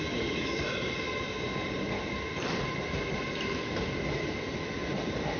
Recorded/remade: recorded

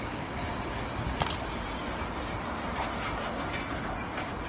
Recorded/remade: recorded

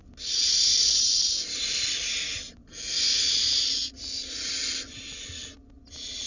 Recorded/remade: recorded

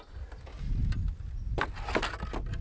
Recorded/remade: recorded